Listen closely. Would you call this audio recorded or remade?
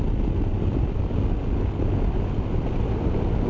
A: recorded